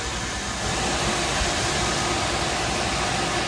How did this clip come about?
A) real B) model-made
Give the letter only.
A